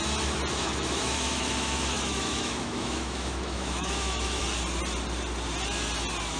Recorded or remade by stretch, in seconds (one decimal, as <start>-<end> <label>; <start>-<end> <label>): 0.0-0.6 recorded; 0.6-4.4 remade; 4.4-6.4 recorded